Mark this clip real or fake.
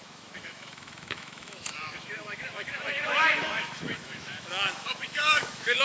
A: fake